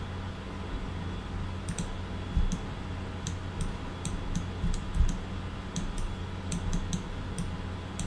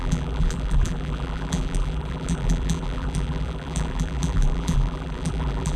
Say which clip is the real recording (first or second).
first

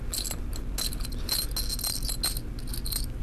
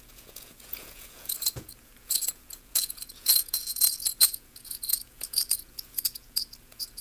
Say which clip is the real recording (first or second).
first